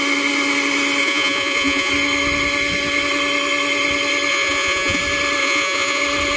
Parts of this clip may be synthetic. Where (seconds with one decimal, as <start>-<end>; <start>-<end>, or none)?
1.0-1.9; 4.3-5.0; 5.4-6.0